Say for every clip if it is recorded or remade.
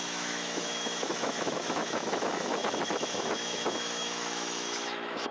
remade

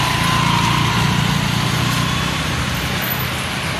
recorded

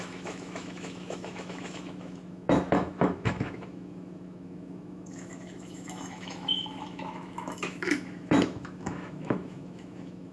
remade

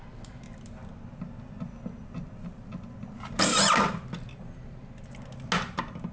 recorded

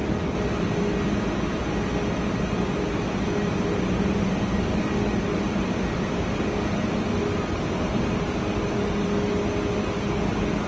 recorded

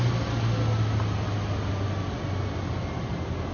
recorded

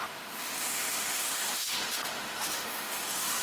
remade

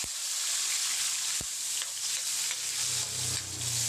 recorded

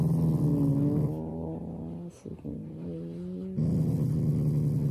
recorded